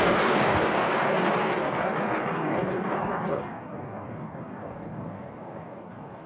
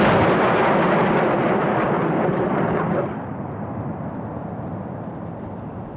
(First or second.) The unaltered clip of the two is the second